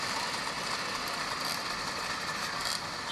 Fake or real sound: real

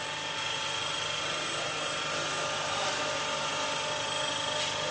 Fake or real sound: real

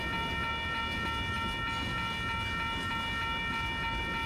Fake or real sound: real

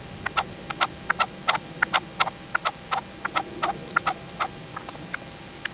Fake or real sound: real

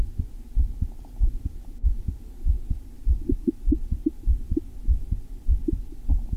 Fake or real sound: real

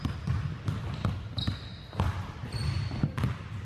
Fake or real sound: real